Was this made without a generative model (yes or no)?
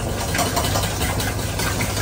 yes